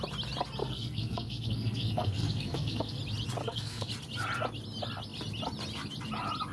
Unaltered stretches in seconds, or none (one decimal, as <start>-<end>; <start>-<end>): 0.0-0.6; 3.0-3.4; 3.9-6.5